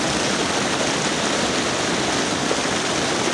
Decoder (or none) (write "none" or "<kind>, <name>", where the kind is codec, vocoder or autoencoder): none